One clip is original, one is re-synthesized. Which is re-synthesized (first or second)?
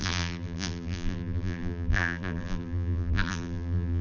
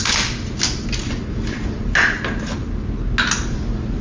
first